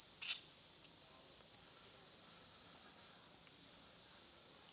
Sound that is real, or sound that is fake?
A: real